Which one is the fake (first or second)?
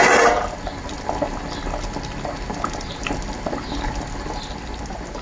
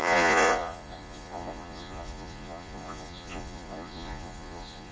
second